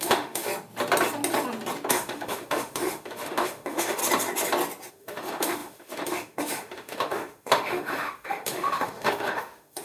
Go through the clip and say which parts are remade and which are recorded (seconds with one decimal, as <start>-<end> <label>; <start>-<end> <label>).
0.0-0.5 remade; 0.5-1.9 recorded; 1.9-4.0 remade; 4.0-4.9 recorded; 4.9-9.8 remade